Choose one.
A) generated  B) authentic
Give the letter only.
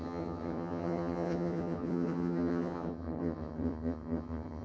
A